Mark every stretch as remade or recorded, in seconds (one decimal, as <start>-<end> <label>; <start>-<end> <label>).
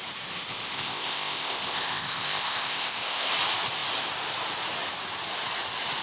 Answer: 0.0-0.5 recorded; 0.5-3.3 remade; 3.3-6.0 recorded